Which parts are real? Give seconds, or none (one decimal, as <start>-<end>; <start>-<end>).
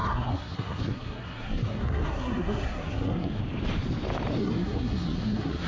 3.4-4.4